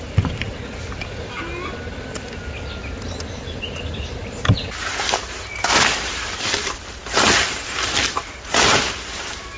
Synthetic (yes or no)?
no